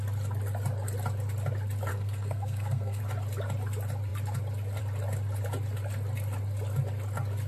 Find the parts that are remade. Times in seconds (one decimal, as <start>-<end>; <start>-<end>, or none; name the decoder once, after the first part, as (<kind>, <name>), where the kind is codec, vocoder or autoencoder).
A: 1.9-3.0 (codec, SNAC)